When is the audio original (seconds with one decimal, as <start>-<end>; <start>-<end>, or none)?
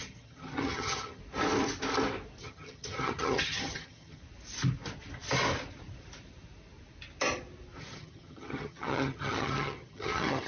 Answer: 1.2-2.4; 4.2-7.8